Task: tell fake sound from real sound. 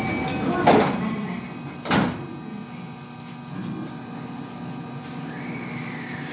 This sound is real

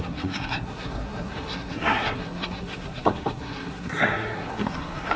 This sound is fake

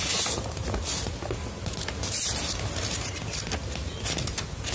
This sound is real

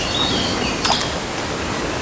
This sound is real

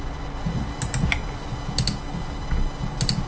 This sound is real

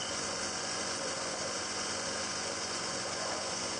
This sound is fake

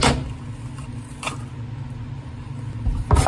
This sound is real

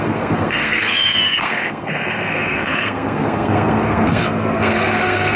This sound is fake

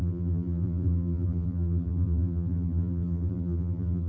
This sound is fake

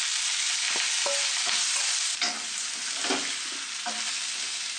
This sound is real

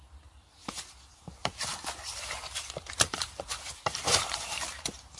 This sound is fake